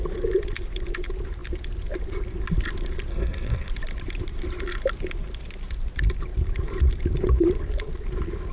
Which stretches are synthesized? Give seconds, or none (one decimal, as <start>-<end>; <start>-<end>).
3.1-3.7